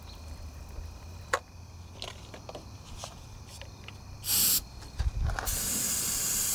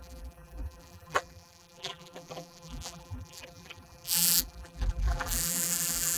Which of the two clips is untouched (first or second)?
first